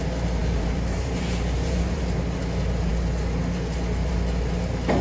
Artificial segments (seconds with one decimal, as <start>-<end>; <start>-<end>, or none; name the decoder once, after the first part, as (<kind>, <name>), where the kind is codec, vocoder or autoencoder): 0.4-2.0 (vocoder, BigVGAN v2)